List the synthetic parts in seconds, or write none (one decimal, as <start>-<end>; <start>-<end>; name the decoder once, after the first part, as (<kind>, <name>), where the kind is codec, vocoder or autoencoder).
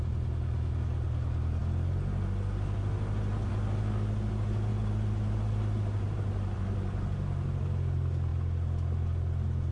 4.7-7.6 (vocoder, BigVGAN v2)